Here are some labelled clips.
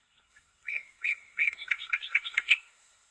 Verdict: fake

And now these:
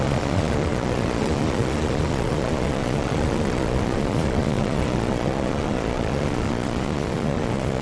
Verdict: fake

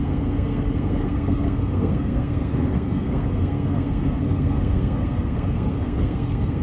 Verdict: fake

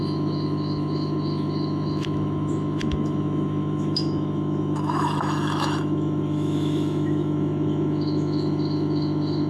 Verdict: fake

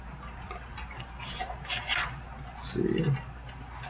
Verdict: real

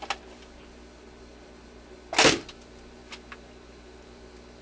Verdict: real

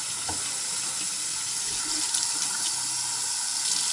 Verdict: real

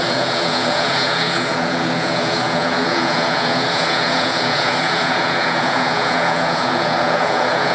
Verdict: fake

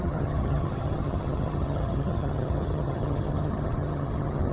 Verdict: fake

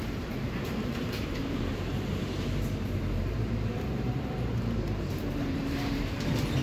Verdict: fake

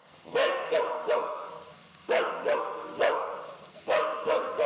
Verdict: fake